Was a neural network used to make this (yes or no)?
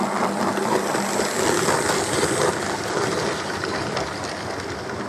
no